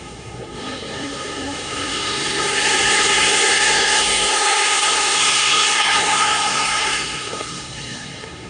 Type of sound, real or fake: fake